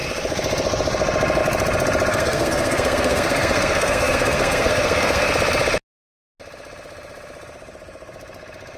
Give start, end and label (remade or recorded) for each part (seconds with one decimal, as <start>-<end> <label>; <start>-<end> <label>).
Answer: 0.0-2.1 recorded; 2.1-5.3 remade; 5.3-8.8 recorded

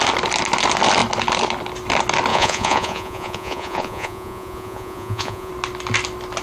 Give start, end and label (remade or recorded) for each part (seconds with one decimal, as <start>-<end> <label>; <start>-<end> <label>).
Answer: 0.0-2.3 recorded; 2.3-5.5 remade; 5.5-6.4 recorded

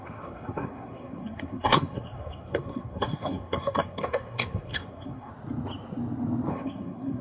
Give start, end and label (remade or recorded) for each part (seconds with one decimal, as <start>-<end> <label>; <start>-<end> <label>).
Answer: 0.0-5.3 remade; 5.3-6.5 recorded; 6.5-7.2 remade

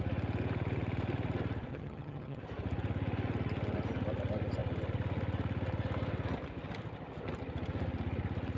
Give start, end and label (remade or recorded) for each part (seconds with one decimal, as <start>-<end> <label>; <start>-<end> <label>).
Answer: 0.0-1.7 recorded; 1.7-2.4 remade; 2.4-8.6 recorded

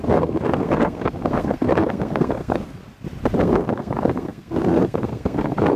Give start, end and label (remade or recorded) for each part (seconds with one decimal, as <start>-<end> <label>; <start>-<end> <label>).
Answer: 0.0-2.8 remade; 2.8-3.4 recorded; 3.4-5.8 remade